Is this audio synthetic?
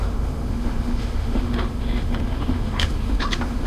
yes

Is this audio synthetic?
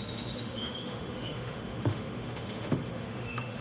yes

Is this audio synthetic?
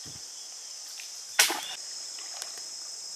no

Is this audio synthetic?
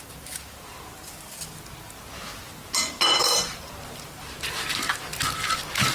no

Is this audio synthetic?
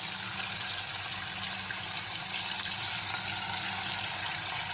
no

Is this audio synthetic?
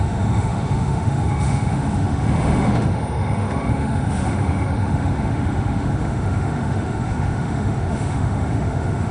yes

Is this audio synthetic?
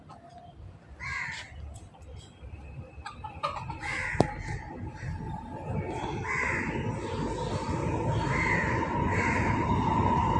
no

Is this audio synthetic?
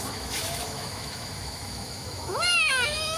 yes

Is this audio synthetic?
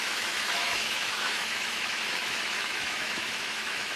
yes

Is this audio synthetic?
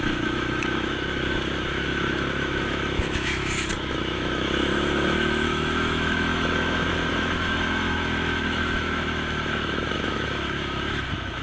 yes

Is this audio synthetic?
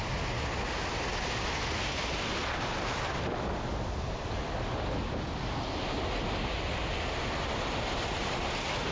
no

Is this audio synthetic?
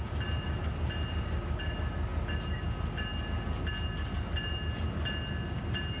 no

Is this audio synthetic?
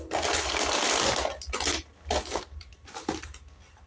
no